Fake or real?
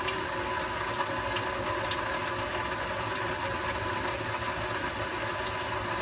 real